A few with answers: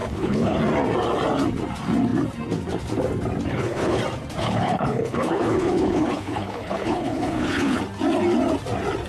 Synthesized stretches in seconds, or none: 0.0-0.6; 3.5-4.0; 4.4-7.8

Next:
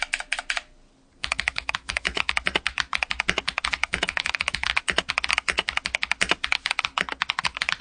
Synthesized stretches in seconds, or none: 1.2-2.3; 3.8-4.7

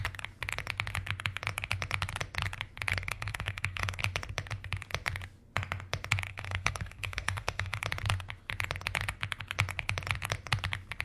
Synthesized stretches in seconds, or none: 2.9-4.0; 6.3-7.8

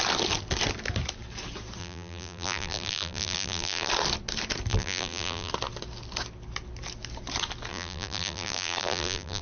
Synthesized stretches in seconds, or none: 1.8-3.9; 4.7-5.5; 7.7-9.4